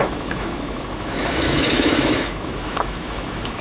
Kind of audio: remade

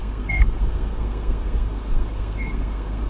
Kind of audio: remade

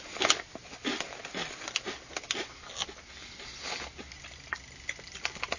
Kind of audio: recorded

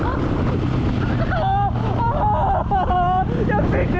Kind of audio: recorded